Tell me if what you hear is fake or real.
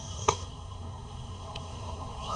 fake